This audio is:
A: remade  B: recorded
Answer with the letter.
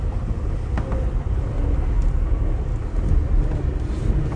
B